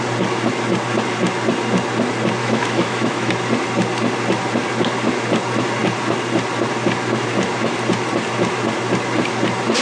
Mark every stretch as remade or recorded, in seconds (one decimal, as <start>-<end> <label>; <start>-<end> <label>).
0.0-2.4 recorded; 2.4-3.3 remade; 3.3-9.8 recorded